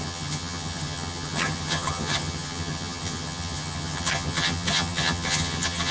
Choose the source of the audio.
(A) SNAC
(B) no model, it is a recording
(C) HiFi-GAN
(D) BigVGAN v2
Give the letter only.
C